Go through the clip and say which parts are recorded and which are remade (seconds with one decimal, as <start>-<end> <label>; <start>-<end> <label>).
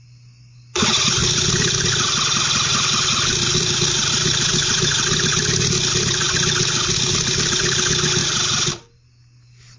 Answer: 0.0-9.8 recorded